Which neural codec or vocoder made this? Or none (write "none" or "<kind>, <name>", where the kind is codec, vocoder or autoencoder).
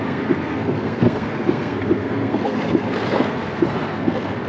codec, SNAC